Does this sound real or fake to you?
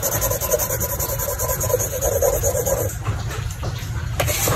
real